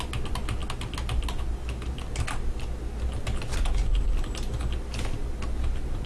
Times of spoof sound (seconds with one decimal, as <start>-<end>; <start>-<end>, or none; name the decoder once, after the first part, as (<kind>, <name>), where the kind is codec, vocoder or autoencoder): none